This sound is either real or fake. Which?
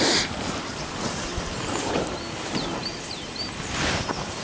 real